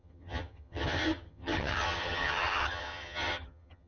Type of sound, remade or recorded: remade